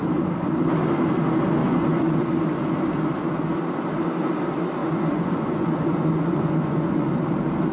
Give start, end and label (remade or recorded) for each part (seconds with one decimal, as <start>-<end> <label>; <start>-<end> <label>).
0.0-1.6 recorded; 1.6-2.3 remade; 2.3-4.8 recorded; 4.8-7.1 remade; 7.1-7.7 recorded